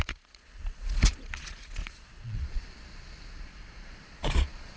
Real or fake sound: fake